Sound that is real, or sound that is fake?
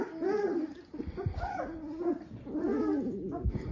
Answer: real